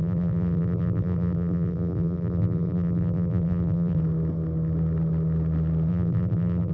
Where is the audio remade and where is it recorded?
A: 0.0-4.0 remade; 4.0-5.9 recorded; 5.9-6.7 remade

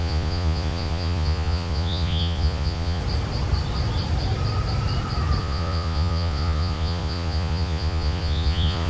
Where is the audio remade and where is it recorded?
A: 0.0-3.0 remade; 3.0-5.4 recorded; 5.4-8.9 remade

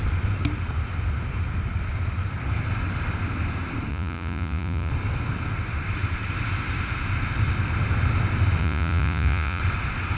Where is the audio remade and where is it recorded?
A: 0.0-3.9 recorded; 3.9-4.9 remade; 4.9-8.6 recorded; 8.6-9.6 remade; 9.6-10.2 recorded

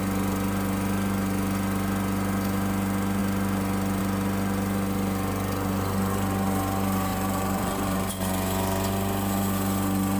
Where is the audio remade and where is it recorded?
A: 0.0-7.1 recorded; 7.1-8.1 remade; 8.1-10.2 recorded

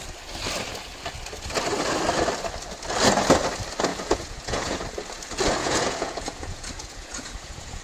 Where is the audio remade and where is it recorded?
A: 0.0-3.9 recorded; 3.9-4.8 remade; 4.8-5.6 recorded; 5.6-7.8 remade

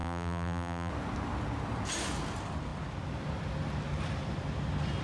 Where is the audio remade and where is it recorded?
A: 0.0-0.9 remade; 0.9-5.0 recorded

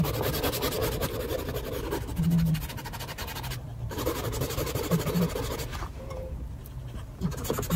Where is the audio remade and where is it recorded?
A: 0.0-3.7 recorded; 3.7-5.2 remade; 5.2-7.8 recorded